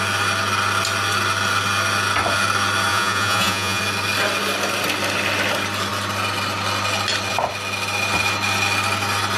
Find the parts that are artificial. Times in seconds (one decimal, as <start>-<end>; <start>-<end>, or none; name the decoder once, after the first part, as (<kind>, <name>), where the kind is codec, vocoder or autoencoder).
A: 2.9-3.8 (vocoder, Vocos)